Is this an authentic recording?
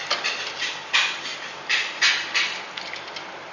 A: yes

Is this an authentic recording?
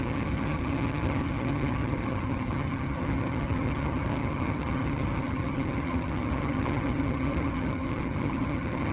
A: no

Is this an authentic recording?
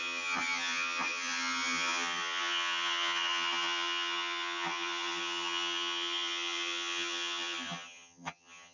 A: no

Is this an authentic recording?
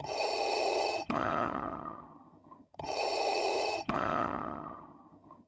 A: no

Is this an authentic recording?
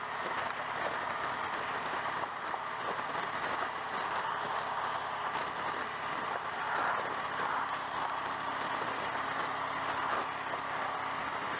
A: yes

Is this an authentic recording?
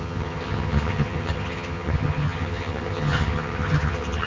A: no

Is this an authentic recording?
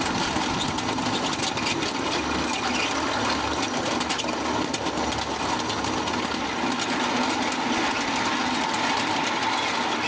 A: yes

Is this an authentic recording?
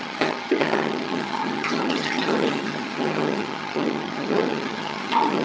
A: no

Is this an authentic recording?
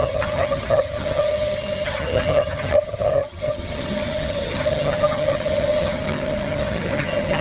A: no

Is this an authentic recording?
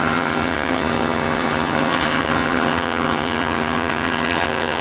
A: no